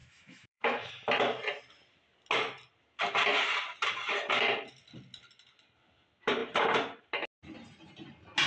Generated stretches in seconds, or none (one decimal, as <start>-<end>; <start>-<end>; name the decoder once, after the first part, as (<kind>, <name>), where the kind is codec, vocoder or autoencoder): 0.0-0.9 (autoencoder, DAC-VAE)